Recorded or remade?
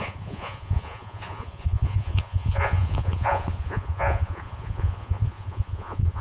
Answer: remade